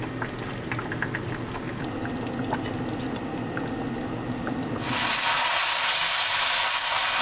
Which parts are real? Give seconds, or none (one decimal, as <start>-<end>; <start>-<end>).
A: 0.0-7.2